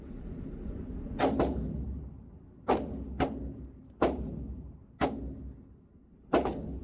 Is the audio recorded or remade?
recorded